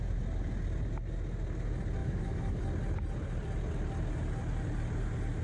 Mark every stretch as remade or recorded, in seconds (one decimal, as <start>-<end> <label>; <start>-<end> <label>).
0.0-2.0 recorded; 2.0-2.6 remade; 2.6-5.4 recorded